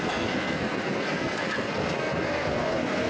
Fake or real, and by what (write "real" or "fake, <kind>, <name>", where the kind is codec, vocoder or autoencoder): fake, codec, SNAC